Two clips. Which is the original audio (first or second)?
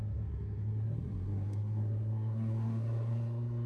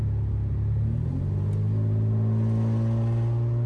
second